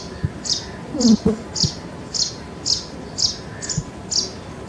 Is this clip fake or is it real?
real